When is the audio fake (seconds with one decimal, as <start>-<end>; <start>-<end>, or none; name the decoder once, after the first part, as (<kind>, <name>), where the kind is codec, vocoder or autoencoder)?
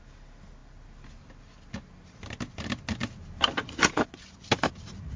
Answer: none